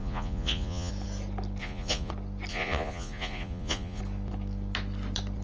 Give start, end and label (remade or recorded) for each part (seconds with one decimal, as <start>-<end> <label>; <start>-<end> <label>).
0.0-0.9 remade; 0.9-1.6 recorded; 1.6-2.1 remade; 2.1-2.5 recorded; 2.5-4.0 remade; 4.0-5.4 recorded